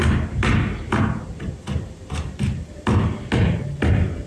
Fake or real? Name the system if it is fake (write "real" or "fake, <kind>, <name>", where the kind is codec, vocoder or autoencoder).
real